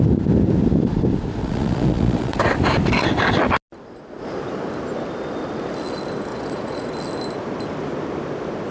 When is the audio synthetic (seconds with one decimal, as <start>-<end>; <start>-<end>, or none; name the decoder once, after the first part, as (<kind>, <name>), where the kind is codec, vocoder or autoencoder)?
1.4-2.4 (vocoder, Vocos); 6.3-6.9